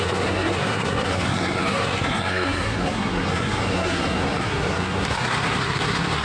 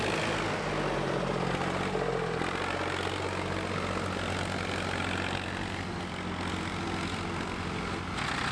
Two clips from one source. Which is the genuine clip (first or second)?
second